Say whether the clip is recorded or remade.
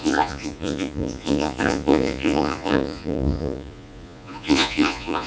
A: remade